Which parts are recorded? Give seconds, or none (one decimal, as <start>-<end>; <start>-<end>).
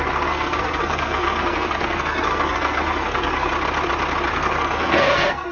3.5-4.3